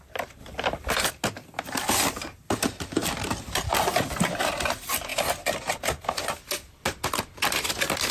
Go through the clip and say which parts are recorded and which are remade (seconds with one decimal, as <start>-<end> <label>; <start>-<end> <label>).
0.0-8.1 recorded